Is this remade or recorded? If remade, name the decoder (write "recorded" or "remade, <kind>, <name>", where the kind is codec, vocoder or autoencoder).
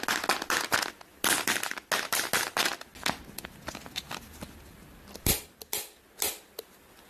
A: recorded